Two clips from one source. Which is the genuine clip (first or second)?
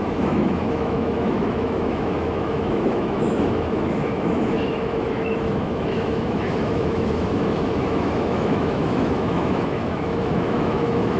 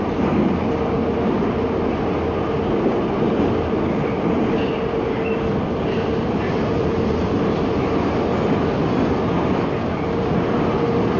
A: second